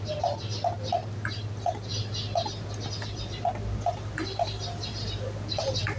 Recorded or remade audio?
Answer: recorded